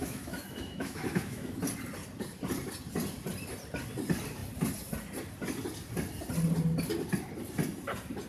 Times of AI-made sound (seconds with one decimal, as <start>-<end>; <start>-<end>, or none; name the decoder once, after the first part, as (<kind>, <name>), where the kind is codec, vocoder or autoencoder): 0.0-1.6 (autoencoder, DAC-VAE)

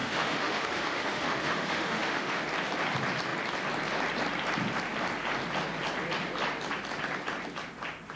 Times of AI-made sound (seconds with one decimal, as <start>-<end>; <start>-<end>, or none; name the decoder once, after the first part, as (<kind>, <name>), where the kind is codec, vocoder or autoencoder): 0.0-2.4 (autoencoder, DAC-VAE)